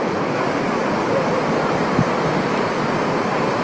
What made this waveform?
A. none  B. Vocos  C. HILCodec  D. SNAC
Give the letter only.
A